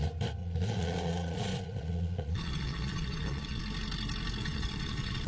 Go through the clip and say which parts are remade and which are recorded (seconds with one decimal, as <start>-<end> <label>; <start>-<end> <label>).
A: 0.0-0.4 recorded; 0.4-3.6 remade; 3.6-4.4 recorded; 4.4-5.3 remade